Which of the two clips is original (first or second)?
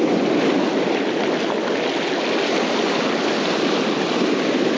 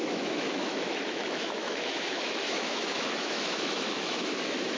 first